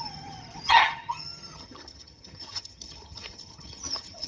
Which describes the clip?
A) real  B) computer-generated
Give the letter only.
B